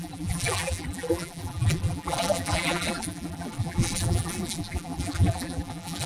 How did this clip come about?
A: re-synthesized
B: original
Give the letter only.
A